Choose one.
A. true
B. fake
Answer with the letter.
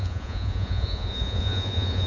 B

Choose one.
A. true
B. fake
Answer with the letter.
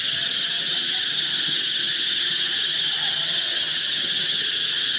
B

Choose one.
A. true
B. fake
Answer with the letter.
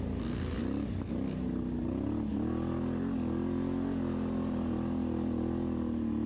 A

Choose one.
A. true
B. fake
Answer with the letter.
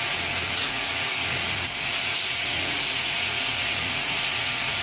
B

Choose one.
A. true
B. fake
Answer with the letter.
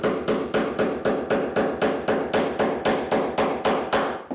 A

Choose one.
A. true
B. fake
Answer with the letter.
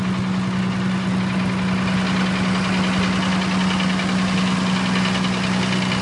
A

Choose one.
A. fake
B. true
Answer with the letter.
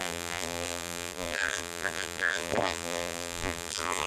A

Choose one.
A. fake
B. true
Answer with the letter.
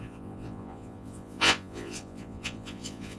A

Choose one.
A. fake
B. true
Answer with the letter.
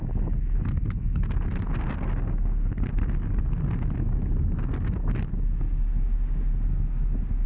B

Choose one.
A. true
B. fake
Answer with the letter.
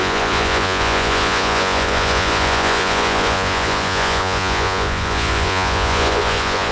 B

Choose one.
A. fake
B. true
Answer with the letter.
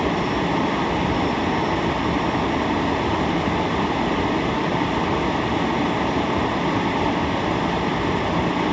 B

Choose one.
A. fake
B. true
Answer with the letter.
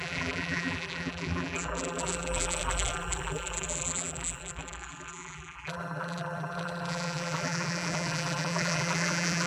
A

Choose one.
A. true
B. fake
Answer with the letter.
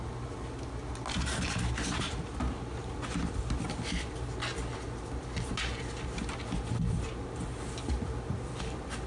A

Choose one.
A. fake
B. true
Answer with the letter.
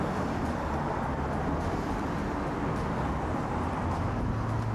B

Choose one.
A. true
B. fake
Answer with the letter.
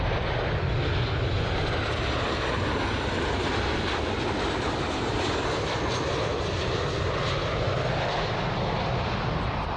A